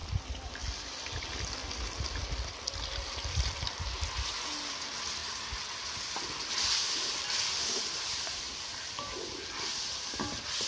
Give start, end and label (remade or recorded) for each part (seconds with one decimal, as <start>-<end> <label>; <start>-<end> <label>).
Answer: 0.0-10.7 recorded